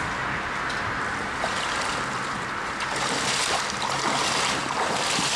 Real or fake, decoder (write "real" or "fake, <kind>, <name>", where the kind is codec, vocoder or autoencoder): real